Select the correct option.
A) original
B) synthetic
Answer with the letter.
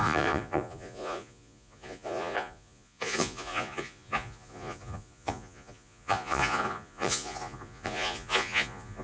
B